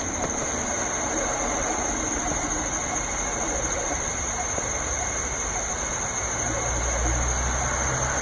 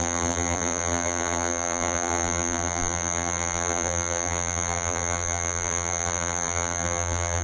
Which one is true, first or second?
first